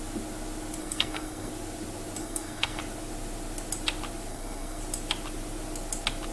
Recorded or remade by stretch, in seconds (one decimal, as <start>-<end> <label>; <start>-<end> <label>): 0.0-0.8 recorded; 0.8-1.5 remade; 1.5-2.2 recorded; 2.2-2.8 remade; 2.8-4.3 recorded; 4.3-4.8 remade; 4.8-6.3 recorded